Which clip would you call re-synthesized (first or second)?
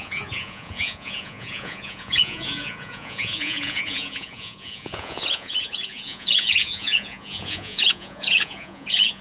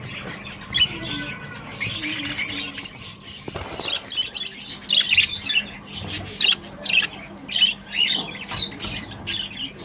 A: first